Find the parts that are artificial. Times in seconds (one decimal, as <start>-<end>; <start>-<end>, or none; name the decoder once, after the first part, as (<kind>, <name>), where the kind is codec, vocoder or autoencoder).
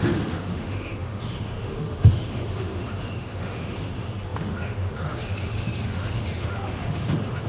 0.0-7.5 (autoencoder, DAC-VAE)